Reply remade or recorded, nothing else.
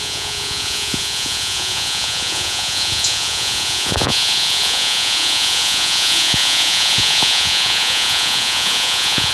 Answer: remade